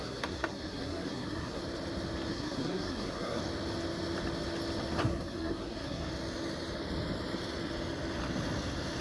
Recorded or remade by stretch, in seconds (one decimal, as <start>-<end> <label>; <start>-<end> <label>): 0.0-1.6 remade; 1.6-2.3 recorded; 2.3-3.4 remade; 3.4-5.0 recorded; 5.0-6.1 remade; 6.1-9.0 recorded